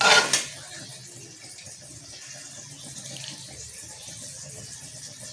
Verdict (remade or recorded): recorded